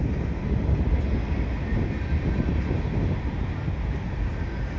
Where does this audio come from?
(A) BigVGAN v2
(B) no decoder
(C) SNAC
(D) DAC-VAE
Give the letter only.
B